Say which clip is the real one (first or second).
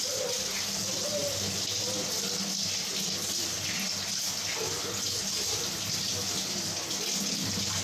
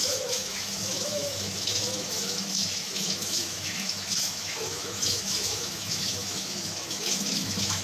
first